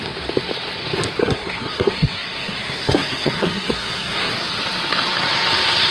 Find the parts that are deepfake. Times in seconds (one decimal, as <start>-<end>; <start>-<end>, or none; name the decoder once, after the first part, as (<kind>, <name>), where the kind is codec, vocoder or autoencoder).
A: 1.2-4.3 (codec, SNAC)